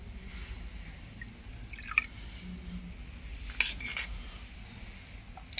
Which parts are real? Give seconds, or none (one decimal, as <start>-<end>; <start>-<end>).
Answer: 0.0-5.6